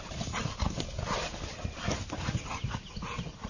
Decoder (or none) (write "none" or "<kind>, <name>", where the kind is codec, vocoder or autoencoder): none